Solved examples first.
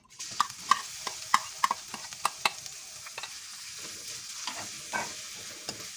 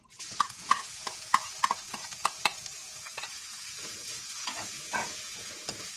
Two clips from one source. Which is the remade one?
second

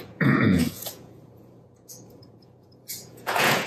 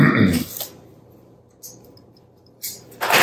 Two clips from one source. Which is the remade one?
first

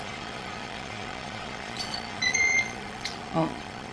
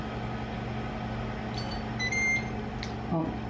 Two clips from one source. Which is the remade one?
first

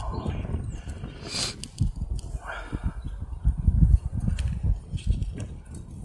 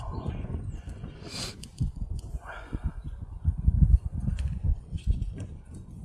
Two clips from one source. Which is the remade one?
second